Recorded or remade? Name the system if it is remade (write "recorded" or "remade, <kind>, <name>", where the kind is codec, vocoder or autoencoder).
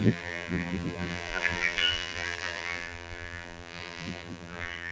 remade, vocoder, BigVGAN v2